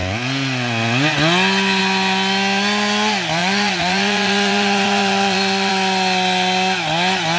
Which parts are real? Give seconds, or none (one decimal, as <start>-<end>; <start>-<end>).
0.0-3.4; 5.7-7.4